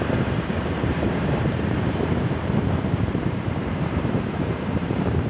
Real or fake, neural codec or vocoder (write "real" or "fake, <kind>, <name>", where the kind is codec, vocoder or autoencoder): fake, vocoder, BigVGAN v2